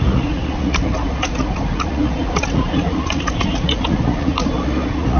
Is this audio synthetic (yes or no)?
yes